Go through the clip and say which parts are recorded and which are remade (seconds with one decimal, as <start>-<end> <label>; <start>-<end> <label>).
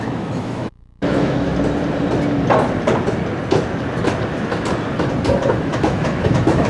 0.0-1.5 remade; 1.5-5.5 recorded; 5.5-6.7 remade